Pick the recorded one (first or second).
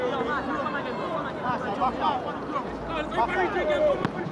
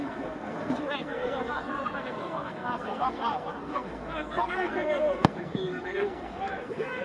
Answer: first